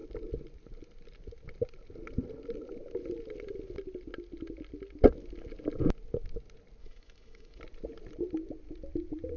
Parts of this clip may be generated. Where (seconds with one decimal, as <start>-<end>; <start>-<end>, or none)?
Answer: 6.8-7.6